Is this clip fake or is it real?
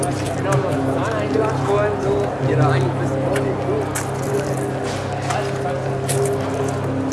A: real